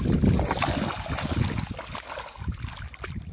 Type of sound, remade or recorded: recorded